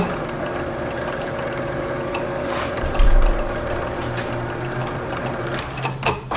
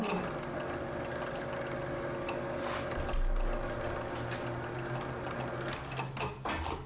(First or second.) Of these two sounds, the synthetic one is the first